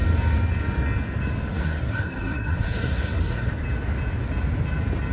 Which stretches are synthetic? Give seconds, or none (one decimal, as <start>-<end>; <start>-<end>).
1.5-3.5